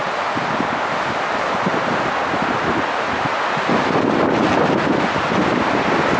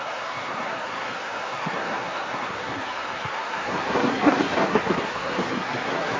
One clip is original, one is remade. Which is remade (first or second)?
second